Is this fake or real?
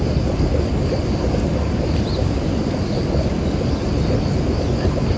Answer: real